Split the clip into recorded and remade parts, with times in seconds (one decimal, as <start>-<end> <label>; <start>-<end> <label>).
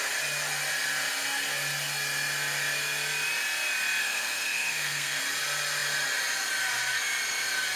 0.0-4.0 recorded; 4.0-5.2 remade; 5.2-7.8 recorded